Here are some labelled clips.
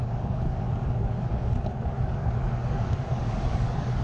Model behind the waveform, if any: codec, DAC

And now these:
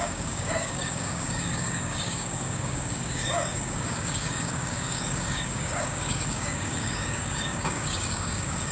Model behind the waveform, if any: codec, DAC